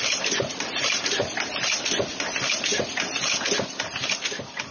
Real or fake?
real